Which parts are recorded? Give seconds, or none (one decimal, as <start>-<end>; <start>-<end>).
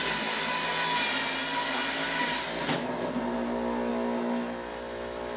0.0-4.7